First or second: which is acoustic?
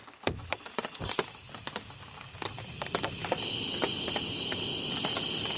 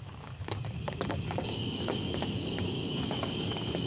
first